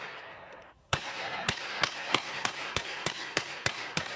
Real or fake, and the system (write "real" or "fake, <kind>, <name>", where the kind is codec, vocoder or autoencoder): fake, codec, SNAC